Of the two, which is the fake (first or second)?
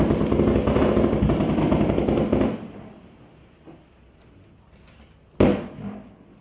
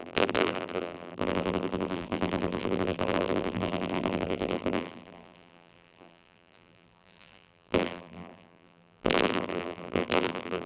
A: second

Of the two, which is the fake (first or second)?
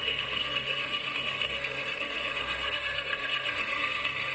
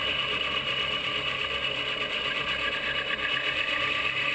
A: first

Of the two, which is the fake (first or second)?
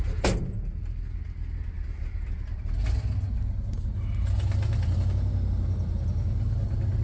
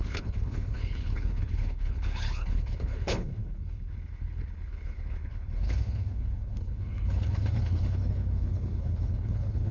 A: second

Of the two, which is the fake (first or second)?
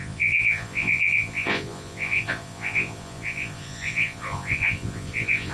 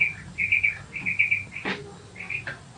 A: first